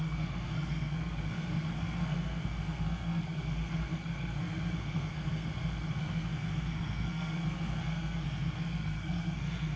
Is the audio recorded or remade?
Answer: remade